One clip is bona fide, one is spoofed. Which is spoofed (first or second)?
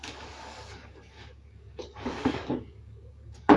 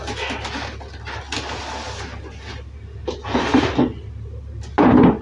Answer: first